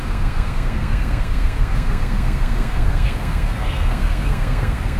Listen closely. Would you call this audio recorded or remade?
remade